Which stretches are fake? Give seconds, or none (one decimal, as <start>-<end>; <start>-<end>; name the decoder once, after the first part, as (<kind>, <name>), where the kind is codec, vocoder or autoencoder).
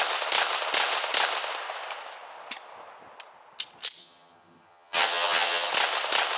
4.0-5.7 (vocoder, HiFi-GAN)